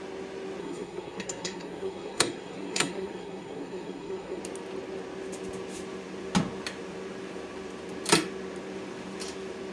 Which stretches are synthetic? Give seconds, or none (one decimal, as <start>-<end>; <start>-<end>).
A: 0.6-4.4